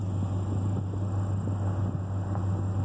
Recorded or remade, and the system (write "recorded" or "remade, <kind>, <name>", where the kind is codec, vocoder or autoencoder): recorded